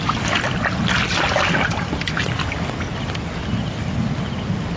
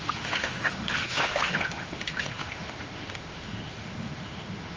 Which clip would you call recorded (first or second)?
first